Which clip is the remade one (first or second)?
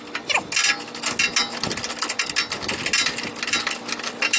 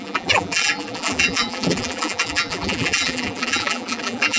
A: second